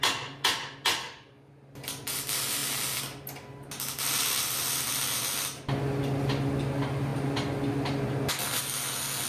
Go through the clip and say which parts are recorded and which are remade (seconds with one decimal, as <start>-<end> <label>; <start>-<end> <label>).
0.0-1.0 recorded; 1.0-1.5 remade; 1.5-9.3 recorded